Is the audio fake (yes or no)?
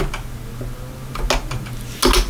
no